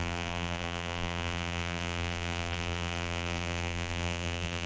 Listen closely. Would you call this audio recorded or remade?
remade